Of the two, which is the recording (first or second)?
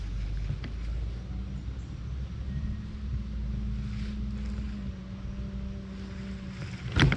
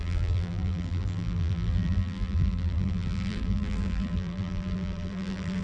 first